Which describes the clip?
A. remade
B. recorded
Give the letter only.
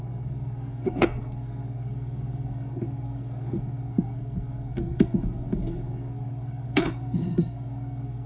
A